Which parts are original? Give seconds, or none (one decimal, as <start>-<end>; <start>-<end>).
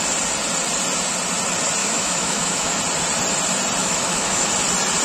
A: 0.0-1.8; 2.8-3.8; 4.5-5.0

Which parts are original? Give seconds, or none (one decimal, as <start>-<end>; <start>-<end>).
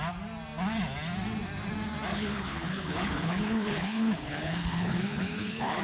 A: 0.0-2.1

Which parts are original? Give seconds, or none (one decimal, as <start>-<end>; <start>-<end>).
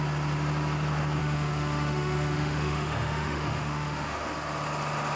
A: 0.0-1.2; 4.3-5.2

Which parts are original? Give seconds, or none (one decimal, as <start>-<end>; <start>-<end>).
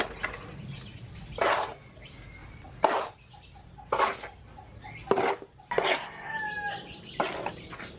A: 0.0-8.0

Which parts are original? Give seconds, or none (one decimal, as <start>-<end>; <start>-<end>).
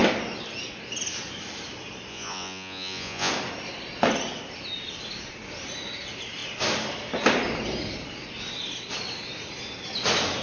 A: 0.0-2.1; 3.3-10.4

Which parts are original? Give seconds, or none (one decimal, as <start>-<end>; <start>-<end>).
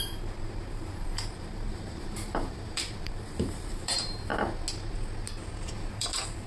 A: 4.3-5.9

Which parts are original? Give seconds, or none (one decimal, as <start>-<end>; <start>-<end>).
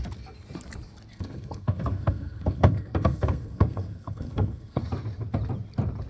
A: 0.0-1.1; 4.8-6.1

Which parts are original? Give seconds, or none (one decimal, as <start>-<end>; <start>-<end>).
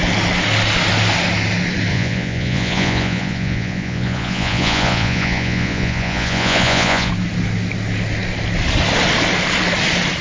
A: 0.0-1.9; 7.1-10.2